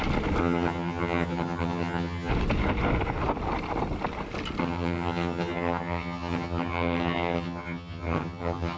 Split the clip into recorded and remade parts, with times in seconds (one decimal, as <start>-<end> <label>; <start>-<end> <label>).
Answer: 0.0-0.4 recorded; 0.4-2.3 remade; 2.3-4.6 recorded; 4.6-8.8 remade